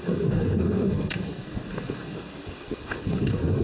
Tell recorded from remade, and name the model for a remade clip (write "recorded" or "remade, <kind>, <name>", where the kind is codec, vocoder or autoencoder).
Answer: remade, codec, SNAC